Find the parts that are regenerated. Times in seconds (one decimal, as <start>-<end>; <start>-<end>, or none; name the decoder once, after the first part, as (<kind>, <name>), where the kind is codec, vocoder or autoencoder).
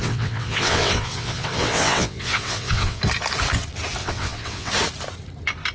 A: 0.0-3.0 (vocoder, WaveNeXt); 4.0-4.7